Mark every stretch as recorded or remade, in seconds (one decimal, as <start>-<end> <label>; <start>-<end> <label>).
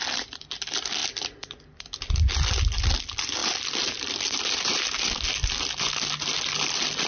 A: 0.0-7.1 recorded